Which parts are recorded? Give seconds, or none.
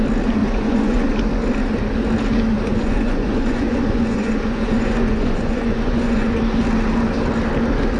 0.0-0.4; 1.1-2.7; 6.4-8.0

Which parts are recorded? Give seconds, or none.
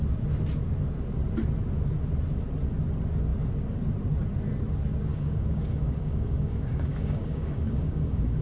0.0-5.1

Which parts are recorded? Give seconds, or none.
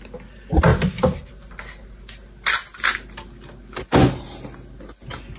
0.0-5.4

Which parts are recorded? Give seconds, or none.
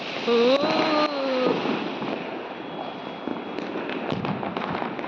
0.0-1.3; 2.3-5.1